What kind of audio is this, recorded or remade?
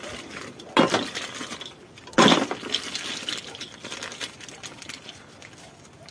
recorded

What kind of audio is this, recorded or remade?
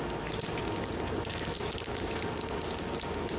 recorded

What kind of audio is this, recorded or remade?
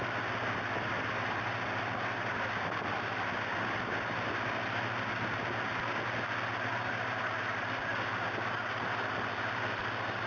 recorded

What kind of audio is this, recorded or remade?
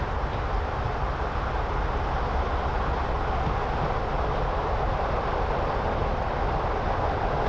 recorded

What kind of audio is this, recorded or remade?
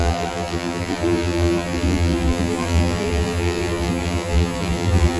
remade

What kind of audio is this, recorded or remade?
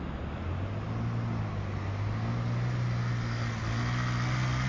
recorded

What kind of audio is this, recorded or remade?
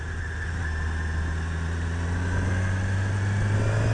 recorded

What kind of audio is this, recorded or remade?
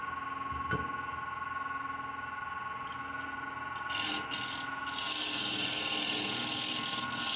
recorded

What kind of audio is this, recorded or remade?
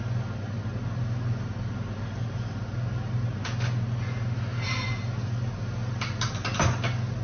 recorded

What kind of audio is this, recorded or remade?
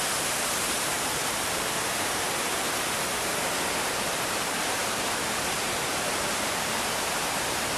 remade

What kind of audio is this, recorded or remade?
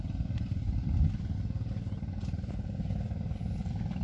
remade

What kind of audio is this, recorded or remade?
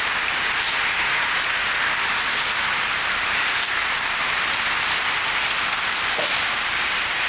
recorded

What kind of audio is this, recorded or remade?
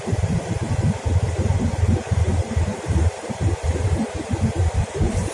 remade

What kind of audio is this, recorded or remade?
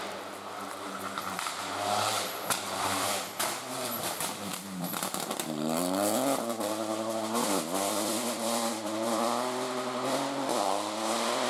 remade